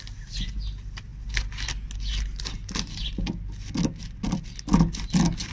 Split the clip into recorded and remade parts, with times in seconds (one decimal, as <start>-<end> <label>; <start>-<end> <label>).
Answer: 0.0-5.5 recorded